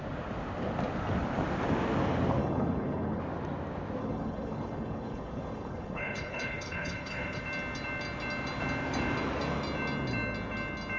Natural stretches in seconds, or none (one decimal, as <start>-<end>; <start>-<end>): 0.0-2.4; 3.2-4.0; 7.4-11.0